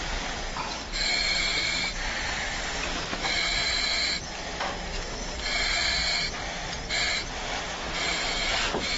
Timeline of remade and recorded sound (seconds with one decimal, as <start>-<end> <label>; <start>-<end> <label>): 0.0-9.0 recorded